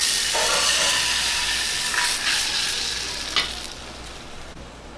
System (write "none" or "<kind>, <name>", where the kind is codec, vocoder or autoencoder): none